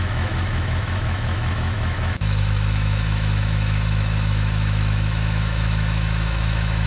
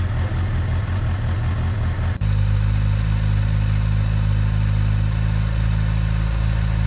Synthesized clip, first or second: first